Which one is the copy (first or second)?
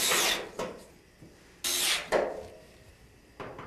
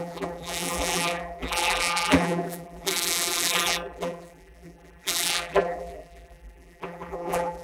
second